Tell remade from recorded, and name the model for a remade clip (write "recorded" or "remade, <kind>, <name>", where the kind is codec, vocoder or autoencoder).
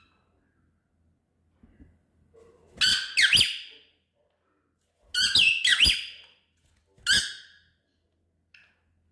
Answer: recorded